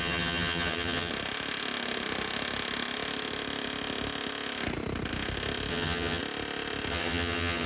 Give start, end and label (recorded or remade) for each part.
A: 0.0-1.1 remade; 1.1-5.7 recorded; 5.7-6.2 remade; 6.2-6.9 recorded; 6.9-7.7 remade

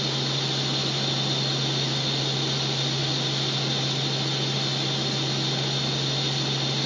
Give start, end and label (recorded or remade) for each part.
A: 0.0-6.9 recorded